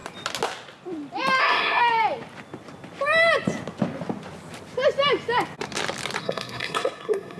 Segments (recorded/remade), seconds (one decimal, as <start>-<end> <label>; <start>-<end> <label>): 0.0-1.4 recorded; 1.4-1.8 remade; 1.8-6.2 recorded; 6.2-7.4 remade